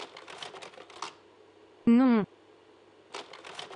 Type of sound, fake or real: real